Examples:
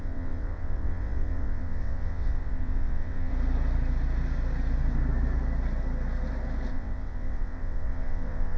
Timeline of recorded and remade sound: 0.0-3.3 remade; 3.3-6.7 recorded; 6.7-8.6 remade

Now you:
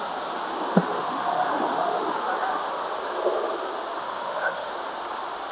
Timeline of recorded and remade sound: 0.0-0.9 recorded; 0.9-2.2 remade; 2.2-4.0 recorded; 4.0-4.7 remade; 4.7-5.5 recorded

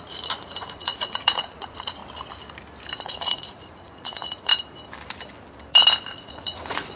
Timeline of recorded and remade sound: 0.0-2.0 remade; 2.0-3.0 recorded; 3.0-4.5 remade; 4.5-6.0 recorded; 6.0-7.0 remade

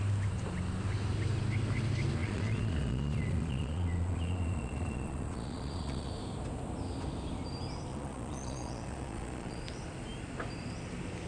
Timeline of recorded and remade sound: 0.0-2.2 recorded; 2.2-6.1 remade; 6.1-7.9 recorded; 7.9-9.6 remade; 9.6-11.3 recorded

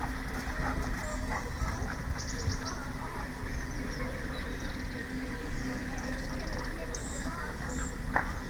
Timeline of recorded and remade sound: 0.0-1.1 recorded; 1.1-1.8 remade; 1.8-5.0 recorded; 5.0-6.3 remade; 6.3-7.0 recorded; 7.0-7.8 remade; 7.8-8.5 recorded

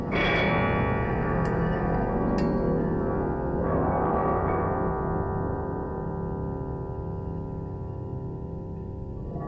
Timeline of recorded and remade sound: 0.0-1.1 recorded; 1.1-1.6 remade; 1.6-3.6 recorded; 3.6-4.9 remade; 4.9-5.5 recorded; 5.5-6.1 remade; 6.1-9.5 recorded

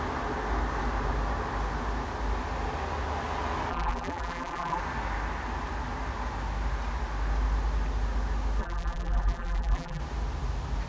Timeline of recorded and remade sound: 0.0-3.7 recorded; 3.7-4.8 remade; 4.8-8.6 recorded; 8.6-10.0 remade; 10.0-10.9 recorded

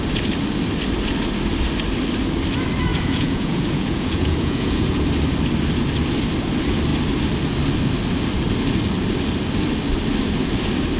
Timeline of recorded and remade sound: 0.0-2.9 recorded; 2.9-5.0 remade; 5.0-11.0 recorded